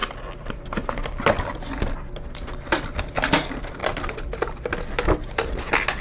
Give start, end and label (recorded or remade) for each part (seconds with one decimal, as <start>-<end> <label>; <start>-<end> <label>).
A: 0.0-6.0 recorded